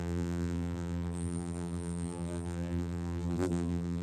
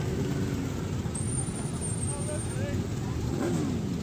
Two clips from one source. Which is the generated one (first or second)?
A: first